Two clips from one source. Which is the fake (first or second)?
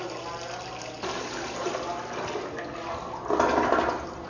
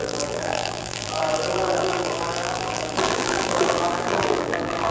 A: second